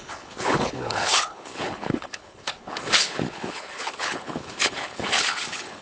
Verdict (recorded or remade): remade